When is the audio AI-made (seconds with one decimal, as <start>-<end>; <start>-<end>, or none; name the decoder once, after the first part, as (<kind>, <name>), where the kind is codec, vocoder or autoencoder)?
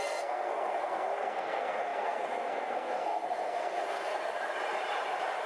0.0-4.1 (codec, SNAC)